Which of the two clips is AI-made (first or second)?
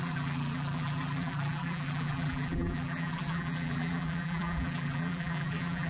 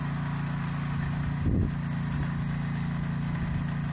first